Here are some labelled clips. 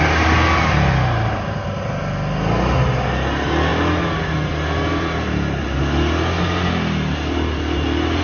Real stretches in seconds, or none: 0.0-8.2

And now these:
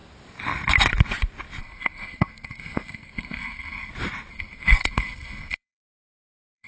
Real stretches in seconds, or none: 0.0-1.6; 3.9-4.3

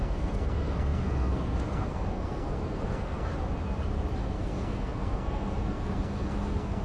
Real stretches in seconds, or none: 3.3-4.2

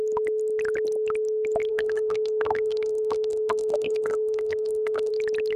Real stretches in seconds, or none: 0.0-1.7; 5.1-5.6

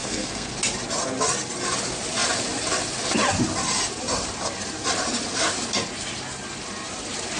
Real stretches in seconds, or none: 0.5-7.4